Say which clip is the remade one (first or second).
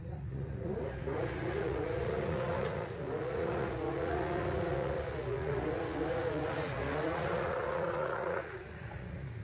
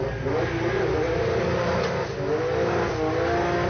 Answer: first